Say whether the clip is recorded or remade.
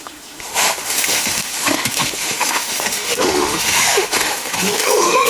remade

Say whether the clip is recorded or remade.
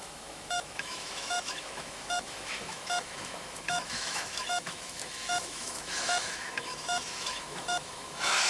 remade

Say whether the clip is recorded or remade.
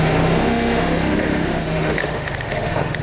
remade